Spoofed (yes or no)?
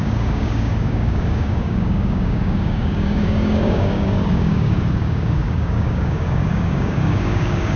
yes